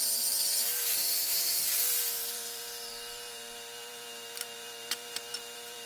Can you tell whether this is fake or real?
fake